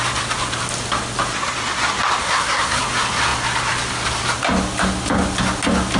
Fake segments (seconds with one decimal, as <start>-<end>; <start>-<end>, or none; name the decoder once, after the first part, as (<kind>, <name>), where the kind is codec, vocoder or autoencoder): 2.2-2.8 (codec, SNAC)